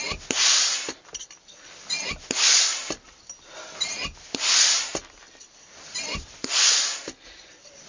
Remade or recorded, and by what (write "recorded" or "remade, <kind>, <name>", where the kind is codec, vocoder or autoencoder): remade, vocoder, BigVGAN v2